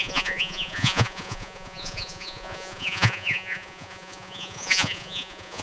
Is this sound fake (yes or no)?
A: yes